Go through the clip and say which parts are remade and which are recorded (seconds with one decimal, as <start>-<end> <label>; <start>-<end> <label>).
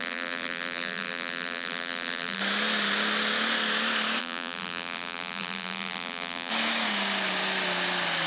0.0-2.4 remade; 2.4-4.2 recorded; 4.2-6.5 remade; 6.5-8.3 recorded